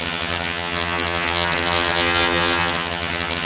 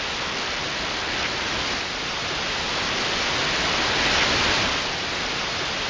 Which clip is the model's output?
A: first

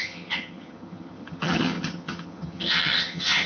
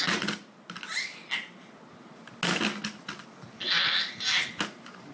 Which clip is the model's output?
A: first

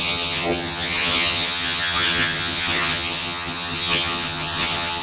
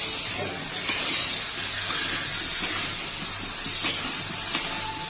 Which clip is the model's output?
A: first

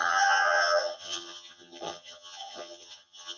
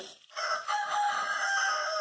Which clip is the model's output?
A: first